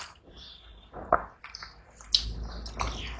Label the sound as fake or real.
real